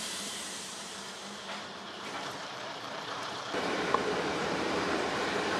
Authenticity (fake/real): fake